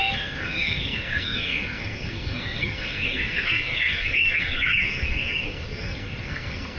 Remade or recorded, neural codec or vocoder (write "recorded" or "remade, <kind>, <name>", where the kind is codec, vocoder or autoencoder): remade, codec, SNAC